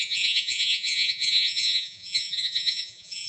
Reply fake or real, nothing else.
fake